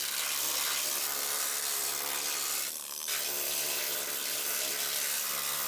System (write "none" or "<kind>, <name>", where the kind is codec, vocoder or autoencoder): vocoder, BigVGAN v2